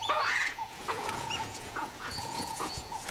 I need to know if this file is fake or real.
fake